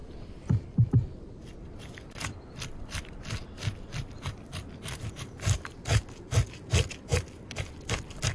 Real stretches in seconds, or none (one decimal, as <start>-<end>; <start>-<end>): 0.0-8.3